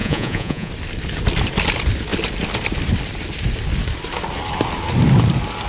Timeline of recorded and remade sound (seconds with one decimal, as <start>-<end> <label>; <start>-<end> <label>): 0.0-0.7 remade; 0.7-5.7 recorded